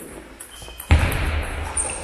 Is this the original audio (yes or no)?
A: yes